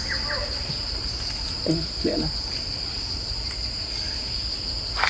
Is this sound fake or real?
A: real